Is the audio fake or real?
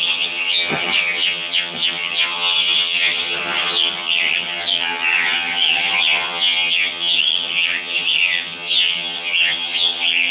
fake